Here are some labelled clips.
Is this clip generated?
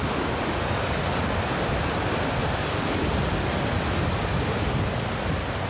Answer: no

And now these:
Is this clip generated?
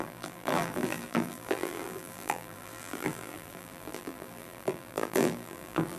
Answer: yes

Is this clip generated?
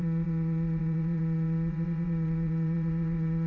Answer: yes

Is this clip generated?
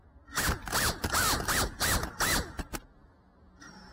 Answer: no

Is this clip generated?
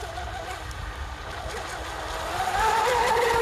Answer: no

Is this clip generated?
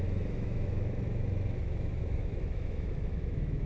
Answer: yes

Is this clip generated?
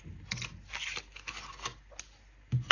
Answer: no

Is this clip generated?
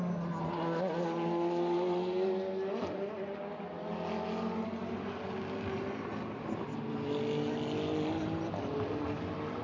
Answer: no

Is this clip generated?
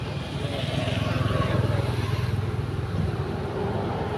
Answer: no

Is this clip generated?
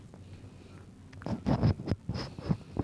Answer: no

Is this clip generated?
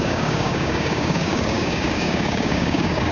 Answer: yes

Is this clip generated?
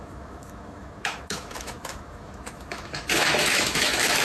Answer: yes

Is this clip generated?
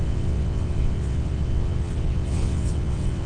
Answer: yes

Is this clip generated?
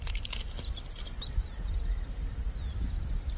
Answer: no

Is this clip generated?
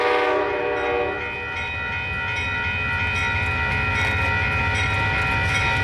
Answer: no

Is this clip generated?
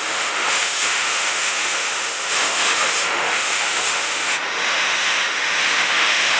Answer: yes